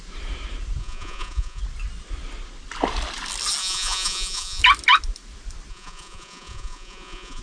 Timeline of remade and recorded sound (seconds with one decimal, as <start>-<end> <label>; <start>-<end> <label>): 0.0-0.8 recorded; 0.8-1.6 remade; 1.6-3.6 recorded; 3.6-4.6 remade; 4.6-5.7 recorded; 5.7-7.4 remade